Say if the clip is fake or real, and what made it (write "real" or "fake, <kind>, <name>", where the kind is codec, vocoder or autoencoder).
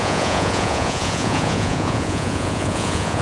fake, vocoder, Vocos